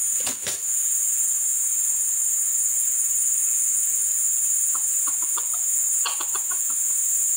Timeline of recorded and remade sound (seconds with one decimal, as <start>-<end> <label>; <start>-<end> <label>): 0.0-7.4 remade